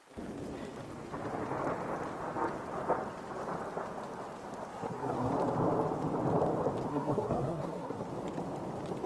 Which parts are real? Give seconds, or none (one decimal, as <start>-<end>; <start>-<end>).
0.0-4.7; 5.3-6.9; 8.1-9.1